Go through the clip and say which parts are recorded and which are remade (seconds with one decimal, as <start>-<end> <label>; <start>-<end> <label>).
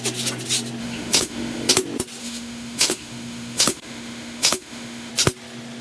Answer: 0.0-0.8 recorded; 0.8-1.7 remade; 1.7-2.2 recorded; 2.2-5.1 remade; 5.1-5.8 recorded